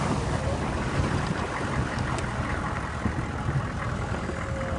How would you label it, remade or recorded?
recorded